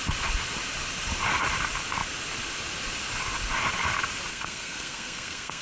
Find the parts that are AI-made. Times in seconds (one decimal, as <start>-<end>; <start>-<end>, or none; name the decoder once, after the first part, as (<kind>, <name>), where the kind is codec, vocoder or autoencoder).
4.3-5.6 (codec, SNAC)